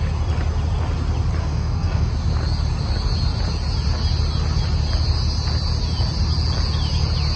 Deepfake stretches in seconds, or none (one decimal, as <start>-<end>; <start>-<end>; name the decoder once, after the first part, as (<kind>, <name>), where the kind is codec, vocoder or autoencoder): 1.4-2.1 (codec, DAC)